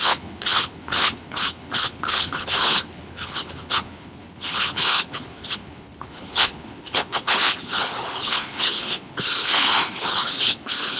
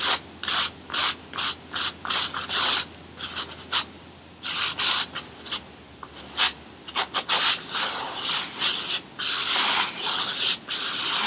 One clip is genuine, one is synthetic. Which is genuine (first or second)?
second